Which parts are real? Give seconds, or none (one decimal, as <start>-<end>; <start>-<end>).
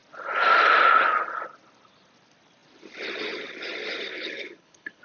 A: 0.0-4.1